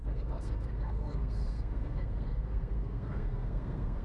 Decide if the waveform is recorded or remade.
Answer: remade